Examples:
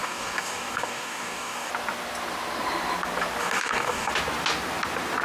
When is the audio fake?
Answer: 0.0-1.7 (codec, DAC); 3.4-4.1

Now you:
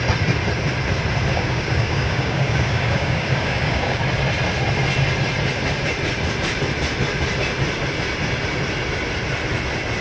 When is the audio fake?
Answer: 1.3-4.0 (codec, DAC)

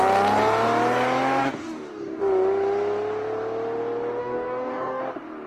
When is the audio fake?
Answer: 1.4-2.2 (codec, DAC); 4.2-5.0